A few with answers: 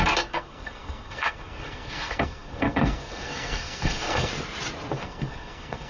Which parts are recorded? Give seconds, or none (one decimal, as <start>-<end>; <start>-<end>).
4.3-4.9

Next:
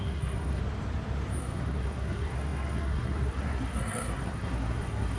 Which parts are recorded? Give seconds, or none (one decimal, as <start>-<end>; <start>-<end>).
0.6-1.4

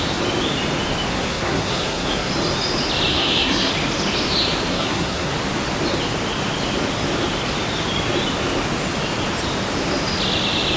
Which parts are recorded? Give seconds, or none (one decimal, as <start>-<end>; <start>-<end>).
0.0-1.1; 2.3-3.1; 3.7-4.7; 5.3-10.8

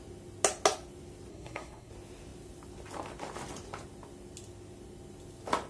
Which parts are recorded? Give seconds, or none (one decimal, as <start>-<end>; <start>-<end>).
0.0-1.3; 1.9-5.7

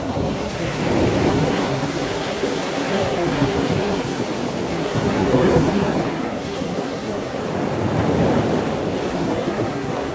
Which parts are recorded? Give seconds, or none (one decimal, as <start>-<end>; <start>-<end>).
0.8-1.3; 4.2-4.7; 7.4-9.1

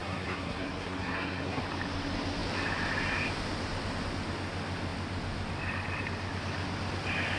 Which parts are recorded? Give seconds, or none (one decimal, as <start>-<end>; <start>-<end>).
1.6-7.4